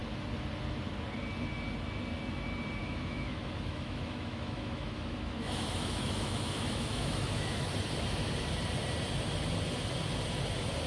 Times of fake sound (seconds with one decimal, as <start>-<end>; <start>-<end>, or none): 2.8-7.7